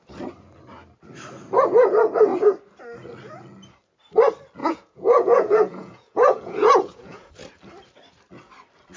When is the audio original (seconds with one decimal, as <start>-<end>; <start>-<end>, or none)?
0.0-4.6; 7.3-9.0